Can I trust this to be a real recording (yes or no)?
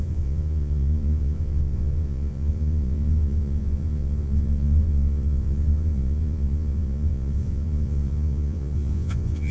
no